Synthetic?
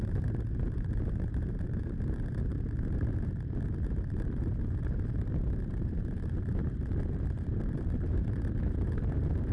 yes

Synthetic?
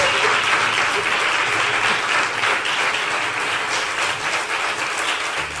no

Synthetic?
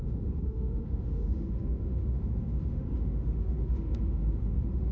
yes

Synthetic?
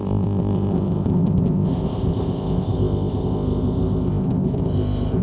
yes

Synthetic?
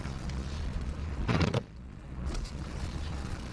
yes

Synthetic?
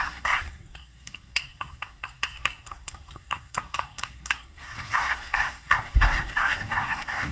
yes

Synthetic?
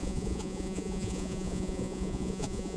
yes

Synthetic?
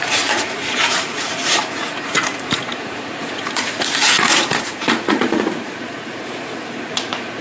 yes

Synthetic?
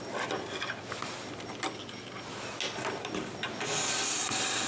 no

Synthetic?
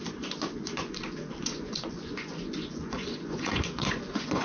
yes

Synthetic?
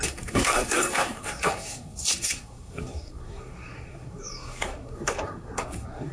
yes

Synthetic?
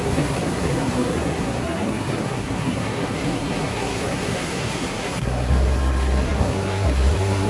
yes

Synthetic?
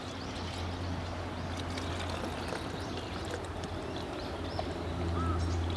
no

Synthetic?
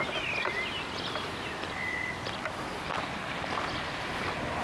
no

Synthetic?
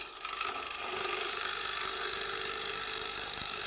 yes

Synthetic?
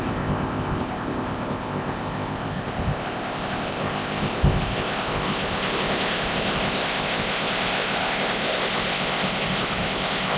yes